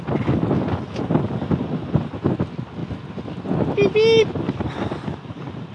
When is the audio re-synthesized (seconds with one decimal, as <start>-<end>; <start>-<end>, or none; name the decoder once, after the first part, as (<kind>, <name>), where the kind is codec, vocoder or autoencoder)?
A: none